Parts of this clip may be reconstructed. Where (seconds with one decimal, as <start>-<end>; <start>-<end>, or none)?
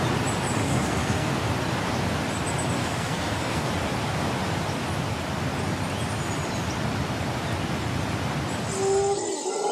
0.6-1.3; 2.8-3.7